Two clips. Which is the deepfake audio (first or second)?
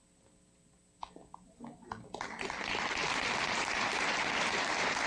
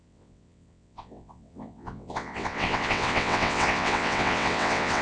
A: second